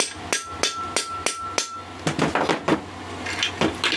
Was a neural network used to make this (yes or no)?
no